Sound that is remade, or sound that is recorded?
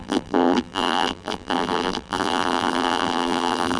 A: remade